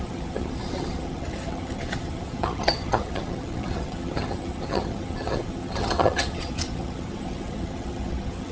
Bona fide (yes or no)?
no